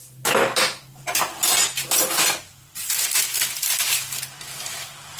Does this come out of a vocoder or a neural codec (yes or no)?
no